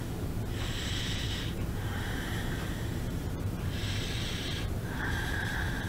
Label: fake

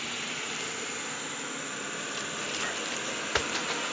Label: real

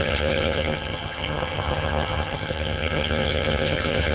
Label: fake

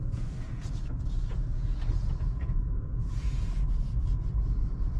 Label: fake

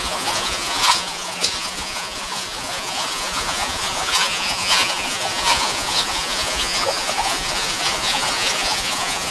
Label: fake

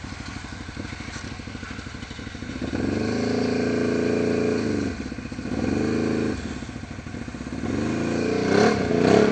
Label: real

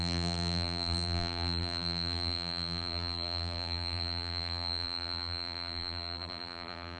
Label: fake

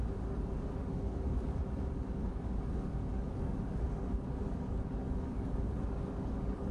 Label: fake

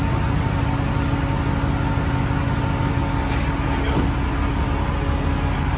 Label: real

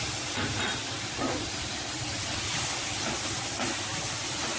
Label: real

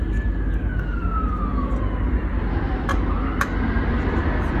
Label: real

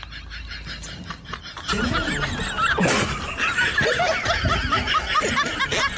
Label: real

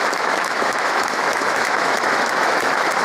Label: fake